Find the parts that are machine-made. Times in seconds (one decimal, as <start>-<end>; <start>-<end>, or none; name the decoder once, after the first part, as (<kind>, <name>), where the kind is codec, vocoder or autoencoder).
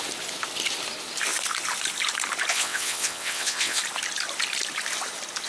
2.5-3.8 (vocoder, WaveNeXt)